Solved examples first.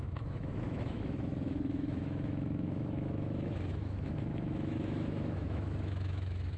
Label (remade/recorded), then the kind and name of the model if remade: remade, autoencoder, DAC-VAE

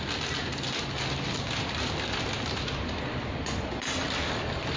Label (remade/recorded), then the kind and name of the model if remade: recorded